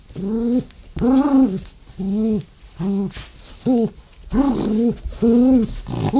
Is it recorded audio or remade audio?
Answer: recorded